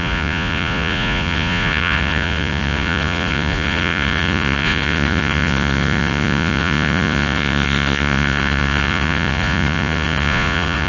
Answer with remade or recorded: remade